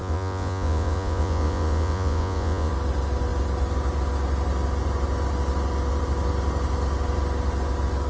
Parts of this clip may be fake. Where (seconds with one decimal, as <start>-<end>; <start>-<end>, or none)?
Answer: 0.0-2.7